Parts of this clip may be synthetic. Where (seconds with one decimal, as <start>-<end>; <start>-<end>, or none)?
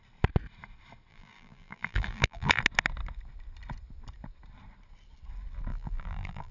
1.1-2.6; 5.7-6.5